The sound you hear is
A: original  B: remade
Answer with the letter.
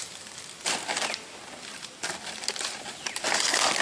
A